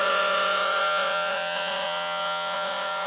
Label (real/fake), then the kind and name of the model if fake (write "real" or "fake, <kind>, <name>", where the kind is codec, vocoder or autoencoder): fake, vocoder, Vocos